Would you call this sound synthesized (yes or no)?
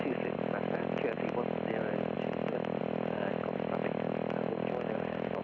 no